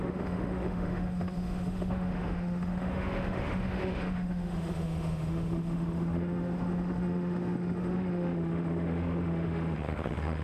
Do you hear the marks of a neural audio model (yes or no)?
yes